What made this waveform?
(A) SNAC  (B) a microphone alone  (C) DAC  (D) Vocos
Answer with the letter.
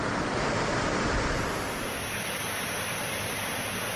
B